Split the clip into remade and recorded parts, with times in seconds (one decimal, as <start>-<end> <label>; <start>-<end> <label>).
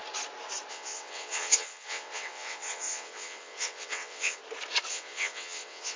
0.0-0.7 recorded; 0.7-4.4 remade; 4.4-4.9 recorded; 4.9-6.0 remade